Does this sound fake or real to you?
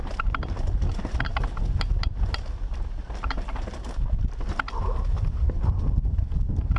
real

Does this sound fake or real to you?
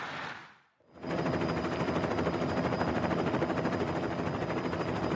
fake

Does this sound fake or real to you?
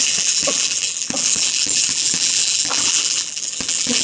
fake